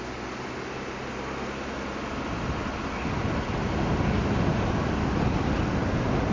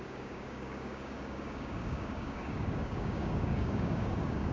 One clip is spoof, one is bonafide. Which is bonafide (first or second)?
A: first